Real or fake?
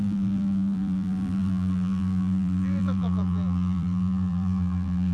fake